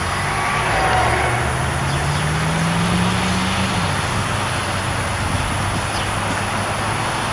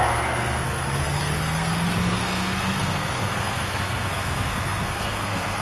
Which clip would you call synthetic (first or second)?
second